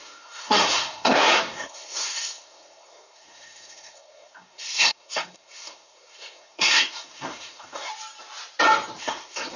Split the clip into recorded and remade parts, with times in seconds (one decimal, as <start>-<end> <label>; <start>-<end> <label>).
0.0-7.9 remade; 7.9-9.0 recorded; 9.0-9.6 remade